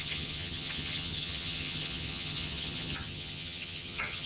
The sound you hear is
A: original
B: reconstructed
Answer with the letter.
B